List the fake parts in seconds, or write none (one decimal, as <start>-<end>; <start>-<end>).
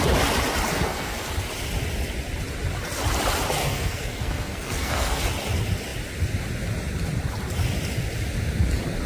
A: 0.7-1.3; 3.6-5.2